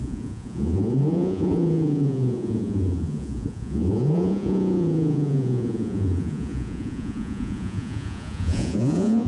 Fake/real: fake